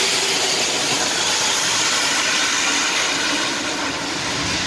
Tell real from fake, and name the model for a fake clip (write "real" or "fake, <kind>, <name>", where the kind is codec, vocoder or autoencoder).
real